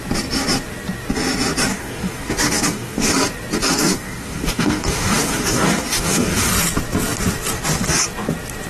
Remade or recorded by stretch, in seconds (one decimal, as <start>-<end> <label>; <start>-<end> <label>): 0.0-1.7 recorded; 1.7-3.1 remade; 3.1-3.7 recorded; 3.7-6.5 remade; 6.5-8.7 recorded